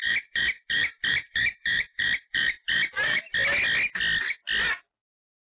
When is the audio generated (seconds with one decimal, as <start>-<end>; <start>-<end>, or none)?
0.0-3.2